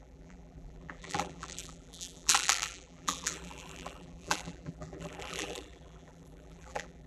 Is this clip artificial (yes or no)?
yes